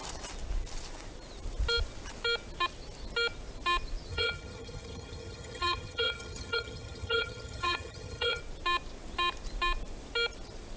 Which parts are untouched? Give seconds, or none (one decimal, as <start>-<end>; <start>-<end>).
0.0-4.1; 8.4-10.8